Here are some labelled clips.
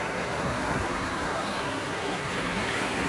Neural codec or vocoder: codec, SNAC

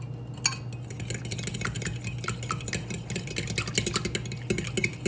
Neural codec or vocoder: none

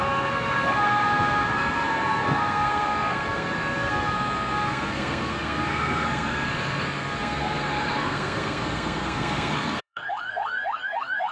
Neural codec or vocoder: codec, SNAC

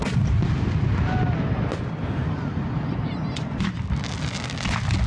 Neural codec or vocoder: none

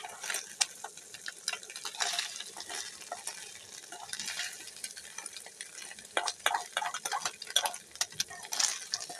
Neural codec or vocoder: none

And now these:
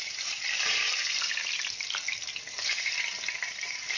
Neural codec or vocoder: none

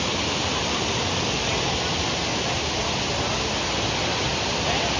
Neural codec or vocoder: none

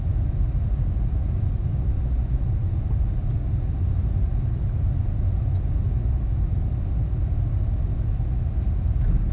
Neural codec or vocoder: none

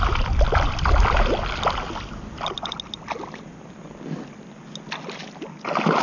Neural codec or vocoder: none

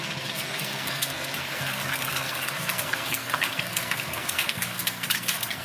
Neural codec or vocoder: codec, SNAC